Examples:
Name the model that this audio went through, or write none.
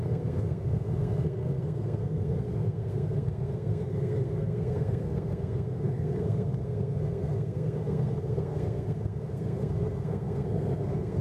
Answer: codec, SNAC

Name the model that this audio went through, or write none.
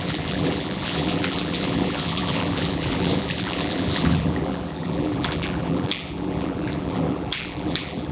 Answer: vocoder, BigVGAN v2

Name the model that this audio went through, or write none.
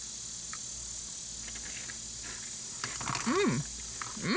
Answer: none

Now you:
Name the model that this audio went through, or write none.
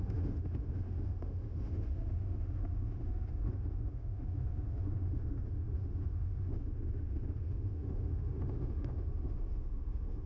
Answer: autoencoder, DAC-VAE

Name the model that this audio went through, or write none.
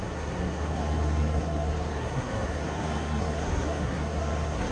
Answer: codec, SNAC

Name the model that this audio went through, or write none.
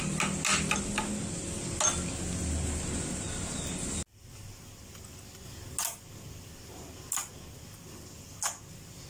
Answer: none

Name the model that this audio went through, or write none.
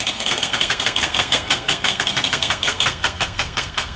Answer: codec, SNAC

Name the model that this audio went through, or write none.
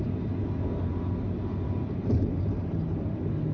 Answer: none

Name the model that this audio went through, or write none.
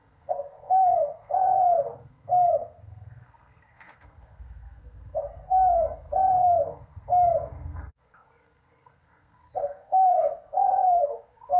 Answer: codec, SNAC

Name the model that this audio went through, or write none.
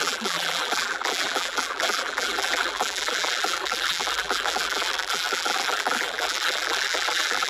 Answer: vocoder, BigVGAN v2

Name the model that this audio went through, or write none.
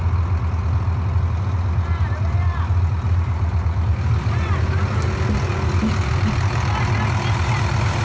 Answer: none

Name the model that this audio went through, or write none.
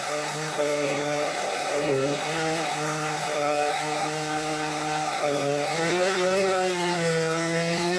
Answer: codec, SNAC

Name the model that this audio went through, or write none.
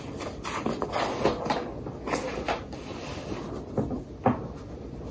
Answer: none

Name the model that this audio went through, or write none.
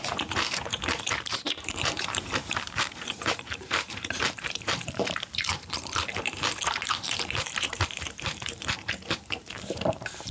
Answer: vocoder, BigVGAN v2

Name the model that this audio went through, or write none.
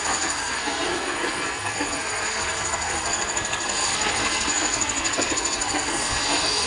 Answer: codec, SNAC